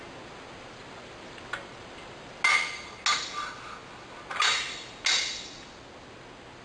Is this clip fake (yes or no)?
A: no